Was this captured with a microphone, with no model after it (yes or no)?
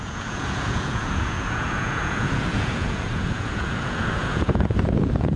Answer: no